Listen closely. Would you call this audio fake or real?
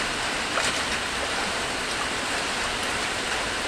real